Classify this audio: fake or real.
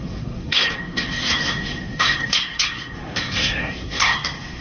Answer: fake